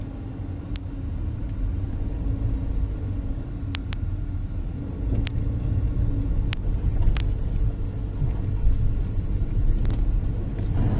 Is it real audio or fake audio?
real